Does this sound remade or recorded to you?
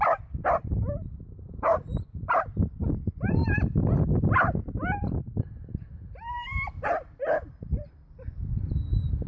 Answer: remade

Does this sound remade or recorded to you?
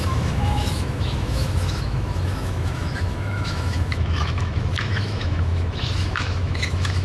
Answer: remade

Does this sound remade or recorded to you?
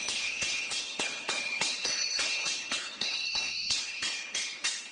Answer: remade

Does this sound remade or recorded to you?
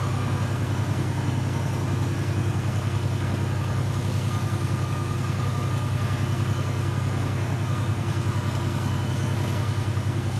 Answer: remade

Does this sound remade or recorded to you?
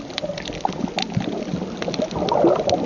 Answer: recorded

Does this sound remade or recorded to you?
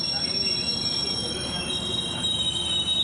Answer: recorded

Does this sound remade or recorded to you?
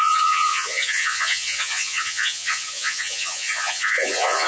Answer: remade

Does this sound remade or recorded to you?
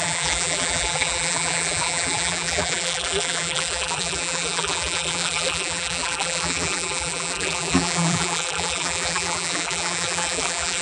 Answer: remade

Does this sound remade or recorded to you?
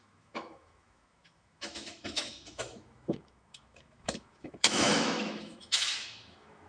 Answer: remade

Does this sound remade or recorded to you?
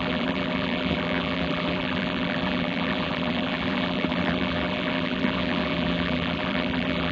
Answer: remade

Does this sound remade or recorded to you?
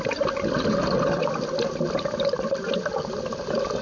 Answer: recorded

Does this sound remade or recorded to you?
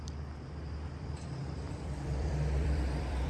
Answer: remade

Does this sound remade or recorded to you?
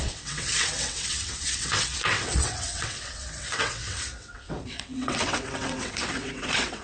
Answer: remade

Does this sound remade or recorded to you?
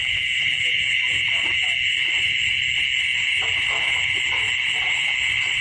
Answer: recorded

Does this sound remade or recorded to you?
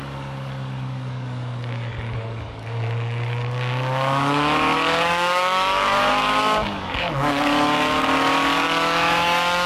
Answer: remade